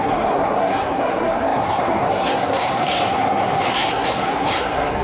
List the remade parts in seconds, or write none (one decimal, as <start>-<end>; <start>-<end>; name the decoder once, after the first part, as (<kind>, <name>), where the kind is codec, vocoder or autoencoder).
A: 0.0-5.0 (codec, SNAC)